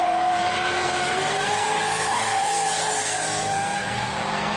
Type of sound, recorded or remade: remade